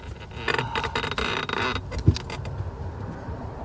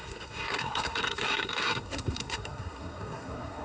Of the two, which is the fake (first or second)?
second